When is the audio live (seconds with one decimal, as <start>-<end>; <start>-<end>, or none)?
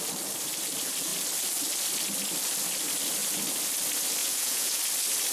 0.0-4.2; 4.8-5.3